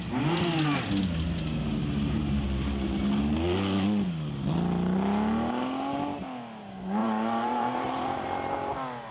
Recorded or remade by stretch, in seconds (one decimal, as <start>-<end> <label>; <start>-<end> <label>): 0.0-7.0 recorded; 7.0-8.7 remade; 8.7-9.1 recorded